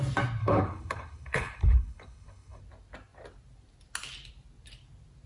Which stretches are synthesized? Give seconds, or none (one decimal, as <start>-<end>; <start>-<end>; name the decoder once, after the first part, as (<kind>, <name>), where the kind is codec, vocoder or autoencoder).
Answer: 0.4-2.6 (codec, HILCodec)